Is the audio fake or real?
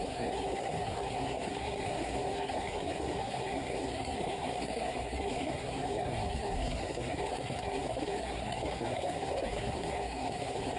fake